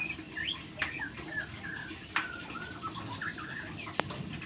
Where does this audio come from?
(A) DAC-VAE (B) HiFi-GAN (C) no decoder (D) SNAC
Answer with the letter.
C